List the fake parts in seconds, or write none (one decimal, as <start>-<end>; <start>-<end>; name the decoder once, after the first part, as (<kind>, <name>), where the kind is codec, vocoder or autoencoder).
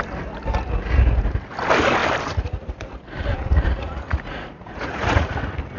3.3-5.3 (vocoder, Vocos)